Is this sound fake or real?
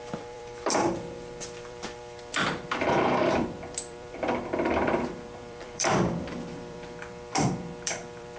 fake